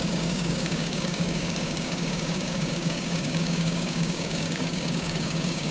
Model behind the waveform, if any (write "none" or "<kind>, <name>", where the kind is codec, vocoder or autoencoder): codec, DAC